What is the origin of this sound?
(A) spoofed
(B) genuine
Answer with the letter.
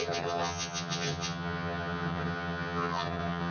A